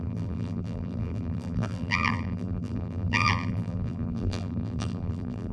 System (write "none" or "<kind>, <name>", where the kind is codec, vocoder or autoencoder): vocoder, BigVGAN v2